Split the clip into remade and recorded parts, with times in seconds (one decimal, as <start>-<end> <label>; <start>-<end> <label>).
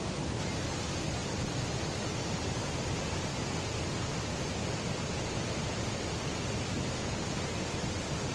0.0-8.3 recorded